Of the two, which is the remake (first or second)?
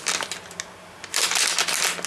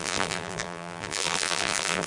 second